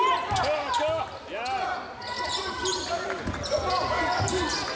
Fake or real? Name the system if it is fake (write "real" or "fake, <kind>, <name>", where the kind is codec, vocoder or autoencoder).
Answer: real